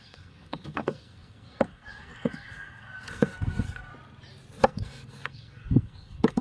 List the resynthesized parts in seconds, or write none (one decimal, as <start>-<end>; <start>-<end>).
0.0-3.9; 4.6-6.4